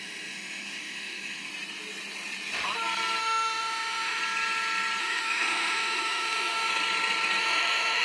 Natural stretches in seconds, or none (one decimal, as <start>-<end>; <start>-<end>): 1.5-3.2; 4.2-5.0; 6.7-7.4